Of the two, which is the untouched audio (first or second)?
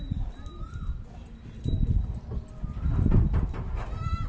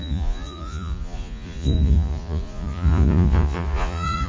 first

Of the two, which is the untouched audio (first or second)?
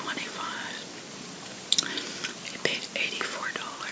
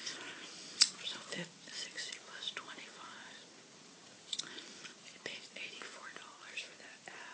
first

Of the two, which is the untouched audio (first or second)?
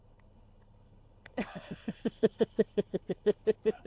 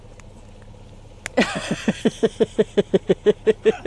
second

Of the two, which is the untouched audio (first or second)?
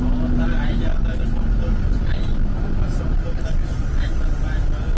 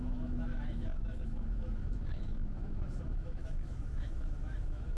first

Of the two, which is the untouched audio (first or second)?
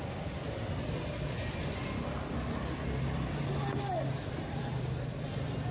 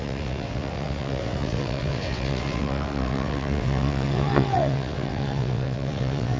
first